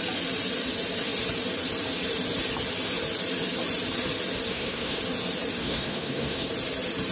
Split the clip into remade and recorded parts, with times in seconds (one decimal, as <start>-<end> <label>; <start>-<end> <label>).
0.0-4.5 recorded; 4.5-5.0 remade; 5.0-5.6 recorded; 5.6-6.5 remade; 6.5-7.1 recorded